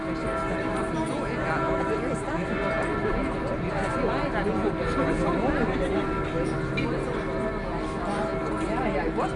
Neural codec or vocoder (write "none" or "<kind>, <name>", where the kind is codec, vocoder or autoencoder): none